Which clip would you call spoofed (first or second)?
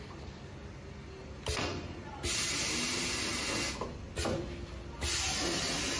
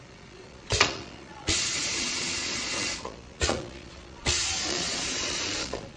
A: second